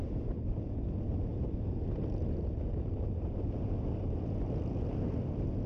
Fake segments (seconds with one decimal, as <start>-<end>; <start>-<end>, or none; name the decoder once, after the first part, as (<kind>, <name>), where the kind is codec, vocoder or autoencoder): none